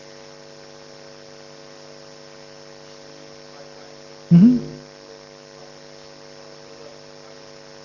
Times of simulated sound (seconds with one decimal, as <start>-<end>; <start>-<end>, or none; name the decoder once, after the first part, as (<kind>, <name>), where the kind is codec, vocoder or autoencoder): none